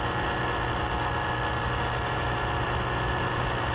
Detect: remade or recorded recorded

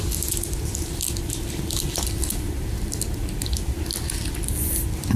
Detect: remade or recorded recorded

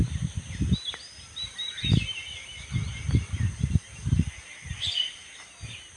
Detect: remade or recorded recorded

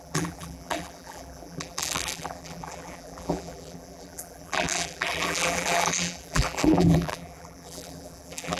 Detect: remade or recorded remade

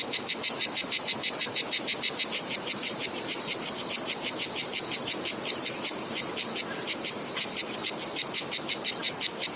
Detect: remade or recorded remade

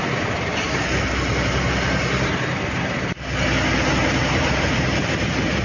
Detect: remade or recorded recorded